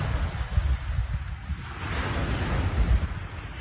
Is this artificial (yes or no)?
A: no